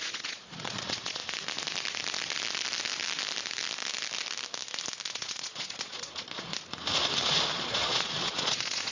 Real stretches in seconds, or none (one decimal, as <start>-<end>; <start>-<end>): 1.2-5.1; 6.5-7.5